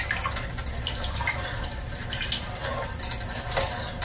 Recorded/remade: recorded